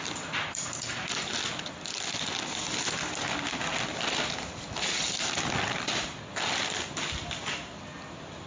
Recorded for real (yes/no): yes